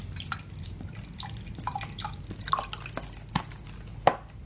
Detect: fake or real real